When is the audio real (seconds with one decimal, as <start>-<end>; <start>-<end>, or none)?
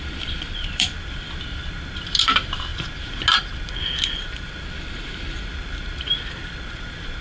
2.7-3.7; 5.5-6.0